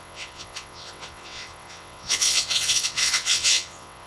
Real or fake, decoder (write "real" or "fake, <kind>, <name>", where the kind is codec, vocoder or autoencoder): fake, vocoder, WaveNeXt